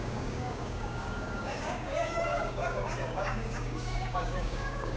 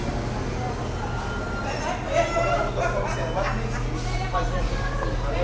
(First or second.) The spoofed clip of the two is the first